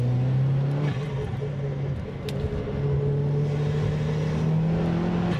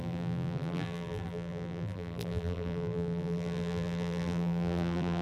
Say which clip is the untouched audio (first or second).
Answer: first